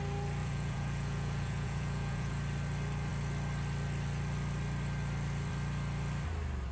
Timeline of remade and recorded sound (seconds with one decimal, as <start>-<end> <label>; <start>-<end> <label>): 0.0-0.4 recorded; 0.4-2.3 remade; 2.3-6.7 recorded